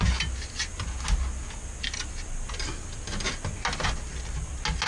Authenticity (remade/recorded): recorded